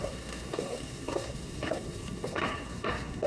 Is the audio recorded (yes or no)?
no